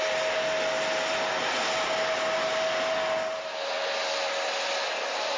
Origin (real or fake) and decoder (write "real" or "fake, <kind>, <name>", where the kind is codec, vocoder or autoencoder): real